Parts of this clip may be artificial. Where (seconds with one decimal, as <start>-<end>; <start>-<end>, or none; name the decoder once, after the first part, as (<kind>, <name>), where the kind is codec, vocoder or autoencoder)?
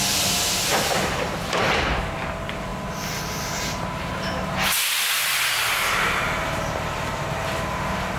2.7-3.5 (vocoder, BigVGAN v2)